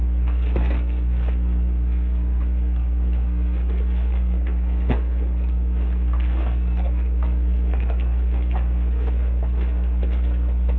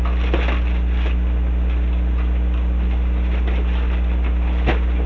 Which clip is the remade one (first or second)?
first